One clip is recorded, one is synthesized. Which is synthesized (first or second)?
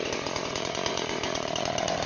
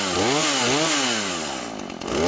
first